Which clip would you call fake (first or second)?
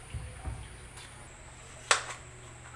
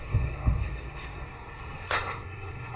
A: second